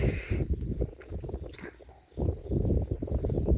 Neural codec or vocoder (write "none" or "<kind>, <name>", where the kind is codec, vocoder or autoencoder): none